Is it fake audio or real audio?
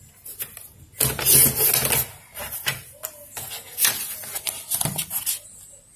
real